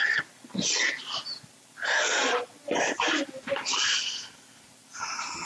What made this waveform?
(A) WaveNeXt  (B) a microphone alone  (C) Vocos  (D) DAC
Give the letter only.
B